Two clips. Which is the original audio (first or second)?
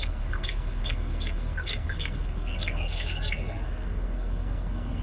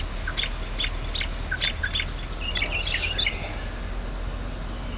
second